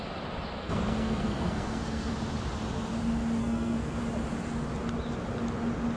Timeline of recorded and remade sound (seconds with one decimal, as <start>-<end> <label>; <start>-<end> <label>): 0.0-0.6 recorded; 0.6-2.1 remade; 2.1-3.4 recorded; 3.4-4.0 remade; 4.0-6.0 recorded